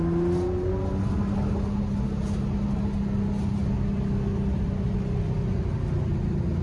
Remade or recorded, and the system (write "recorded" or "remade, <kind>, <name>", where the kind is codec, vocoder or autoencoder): recorded